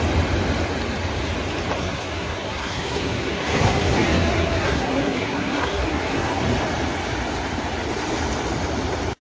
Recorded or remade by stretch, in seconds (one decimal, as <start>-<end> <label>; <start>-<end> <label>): 0.0-1.8 recorded; 1.8-6.4 remade; 6.4-9.2 recorded